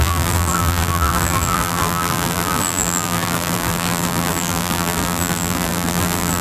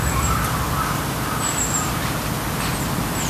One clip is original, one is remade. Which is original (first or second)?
second